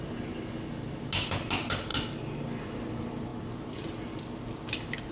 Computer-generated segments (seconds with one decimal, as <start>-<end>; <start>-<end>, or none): none